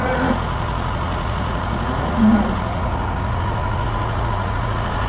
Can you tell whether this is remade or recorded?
remade